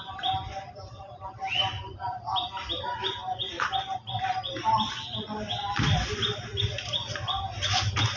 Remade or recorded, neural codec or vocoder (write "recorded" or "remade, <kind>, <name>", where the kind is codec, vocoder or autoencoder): recorded